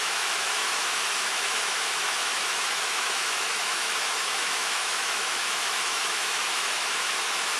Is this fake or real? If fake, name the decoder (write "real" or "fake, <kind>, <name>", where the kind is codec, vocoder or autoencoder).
fake, autoencoder, DAC-VAE